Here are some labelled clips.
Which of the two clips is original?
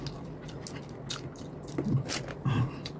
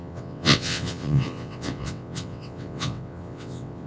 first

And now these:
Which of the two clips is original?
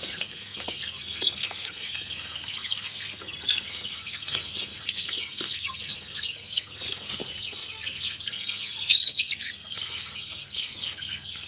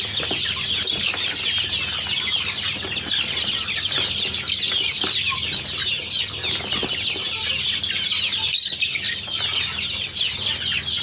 second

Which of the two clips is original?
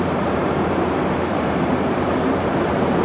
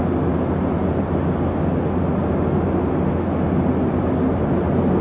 second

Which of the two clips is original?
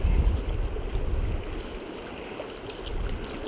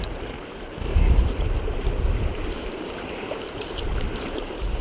first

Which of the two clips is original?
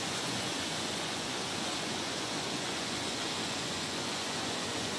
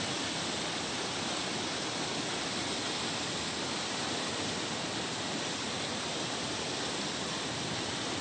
second